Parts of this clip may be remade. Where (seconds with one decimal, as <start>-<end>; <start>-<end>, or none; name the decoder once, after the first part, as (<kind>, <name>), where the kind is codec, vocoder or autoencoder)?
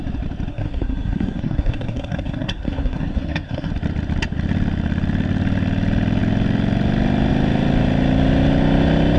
0.5-3.7 (codec, SNAC)